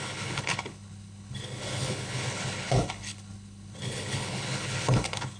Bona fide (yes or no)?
no